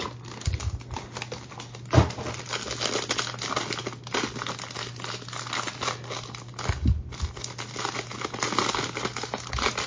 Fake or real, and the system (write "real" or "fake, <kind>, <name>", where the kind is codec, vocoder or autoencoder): real